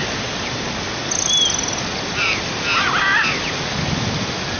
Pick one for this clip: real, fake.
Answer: real